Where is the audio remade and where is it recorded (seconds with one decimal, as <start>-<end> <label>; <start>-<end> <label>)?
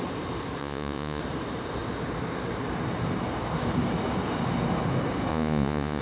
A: 0.0-0.6 recorded; 0.6-1.2 remade; 1.2-5.3 recorded; 5.3-6.0 remade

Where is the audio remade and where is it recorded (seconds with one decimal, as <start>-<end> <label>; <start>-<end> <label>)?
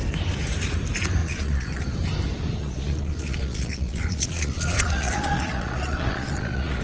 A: 0.0-1.2 recorded; 1.2-1.8 remade; 1.8-2.6 recorded; 2.6-6.8 remade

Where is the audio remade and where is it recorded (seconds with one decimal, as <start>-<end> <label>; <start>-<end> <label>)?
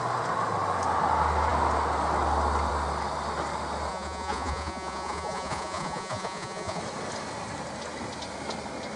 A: 0.0-3.9 recorded; 3.9-6.8 remade; 6.8-9.0 recorded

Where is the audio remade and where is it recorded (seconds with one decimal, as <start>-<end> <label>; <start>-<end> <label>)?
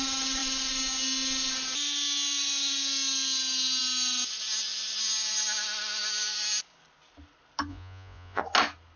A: 0.0-7.7 recorded; 7.7-8.4 remade; 8.4-9.0 recorded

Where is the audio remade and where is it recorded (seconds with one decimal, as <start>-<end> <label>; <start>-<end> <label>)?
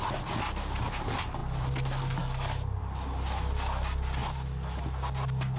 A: 0.0-5.6 recorded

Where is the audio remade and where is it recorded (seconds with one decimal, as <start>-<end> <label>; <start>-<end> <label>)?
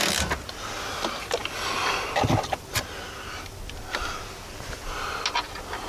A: 0.0-5.9 recorded